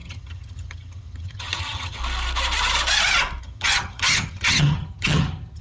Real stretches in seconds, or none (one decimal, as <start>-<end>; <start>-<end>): 2.0-3.4